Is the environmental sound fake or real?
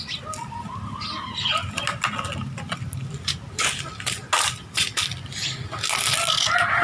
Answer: real